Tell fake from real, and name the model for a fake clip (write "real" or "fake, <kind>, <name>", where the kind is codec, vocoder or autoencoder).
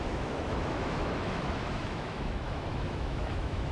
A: fake, autoencoder, DAC-VAE